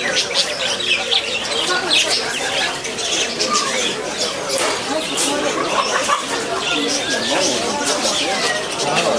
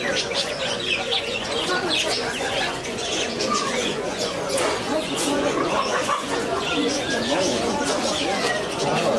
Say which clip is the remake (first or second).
second